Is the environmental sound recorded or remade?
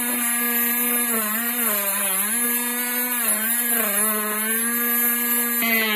recorded